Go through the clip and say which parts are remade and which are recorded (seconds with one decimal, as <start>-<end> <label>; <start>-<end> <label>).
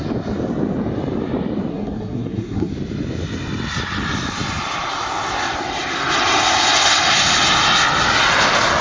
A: 0.0-1.7 recorded; 1.7-2.7 remade; 2.7-8.8 recorded